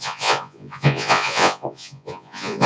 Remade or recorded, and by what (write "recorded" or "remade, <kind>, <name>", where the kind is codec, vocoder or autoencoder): remade, vocoder, Vocos